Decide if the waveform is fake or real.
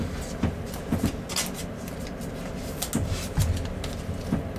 real